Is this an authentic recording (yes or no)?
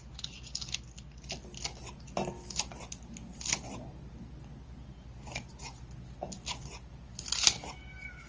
yes